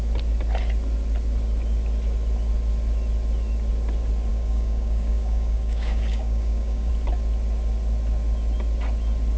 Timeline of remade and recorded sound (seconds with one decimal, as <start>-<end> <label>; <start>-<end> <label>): 0.0-4.3 recorded; 4.3-6.9 remade; 6.9-9.4 recorded